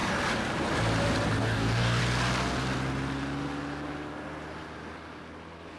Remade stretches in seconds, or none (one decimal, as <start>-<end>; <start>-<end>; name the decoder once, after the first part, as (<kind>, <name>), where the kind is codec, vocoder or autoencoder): 1.4-2.0 (codec, DAC)